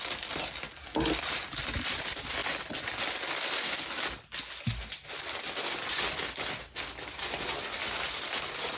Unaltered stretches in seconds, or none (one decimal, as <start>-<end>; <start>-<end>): 0.0-8.8